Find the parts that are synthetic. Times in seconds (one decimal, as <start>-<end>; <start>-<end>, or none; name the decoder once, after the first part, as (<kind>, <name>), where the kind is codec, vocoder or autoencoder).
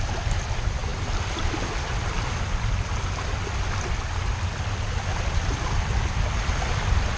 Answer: 0.9-1.5 (vocoder, BigVGAN v2)